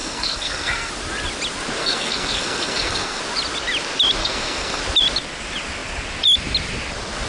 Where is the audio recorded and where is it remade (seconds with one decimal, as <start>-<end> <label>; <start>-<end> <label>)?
0.0-0.9 remade; 0.9-1.8 recorded; 1.8-3.2 remade; 3.2-4.2 recorded; 4.2-4.8 remade; 4.8-7.3 recorded